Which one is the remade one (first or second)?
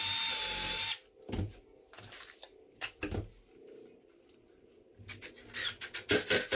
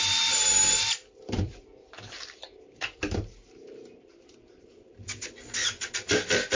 second